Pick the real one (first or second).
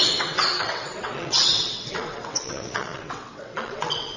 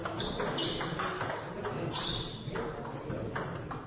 second